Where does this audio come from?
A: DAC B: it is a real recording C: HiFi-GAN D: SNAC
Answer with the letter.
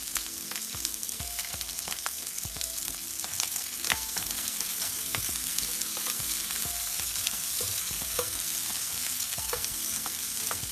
D